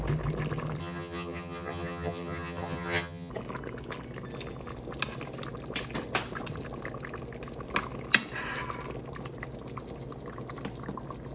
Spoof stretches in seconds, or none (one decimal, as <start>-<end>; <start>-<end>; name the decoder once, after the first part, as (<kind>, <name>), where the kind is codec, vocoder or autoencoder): 0.8-3.3 (vocoder, HiFi-GAN)